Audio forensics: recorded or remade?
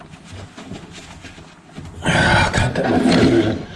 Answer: recorded